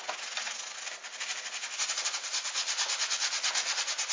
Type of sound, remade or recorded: recorded